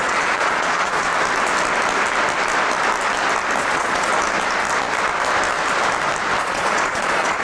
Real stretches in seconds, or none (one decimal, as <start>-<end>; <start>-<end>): 1.1-3.6; 4.1-6.4